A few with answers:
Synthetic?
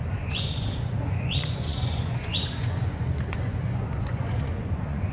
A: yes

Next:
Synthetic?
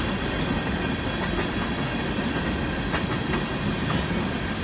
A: no